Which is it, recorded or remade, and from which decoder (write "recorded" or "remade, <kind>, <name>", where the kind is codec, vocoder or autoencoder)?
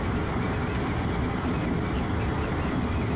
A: recorded